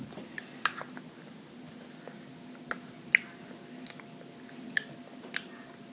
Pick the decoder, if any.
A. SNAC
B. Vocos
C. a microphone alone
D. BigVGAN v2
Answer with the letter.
C